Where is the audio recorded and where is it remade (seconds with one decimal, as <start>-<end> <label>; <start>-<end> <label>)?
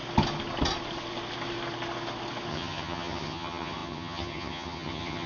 0.0-2.5 recorded; 2.5-5.3 remade